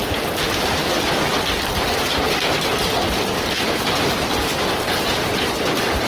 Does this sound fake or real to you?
real